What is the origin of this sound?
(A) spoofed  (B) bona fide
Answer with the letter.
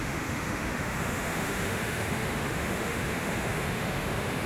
A